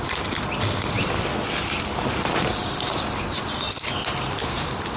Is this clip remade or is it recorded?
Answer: recorded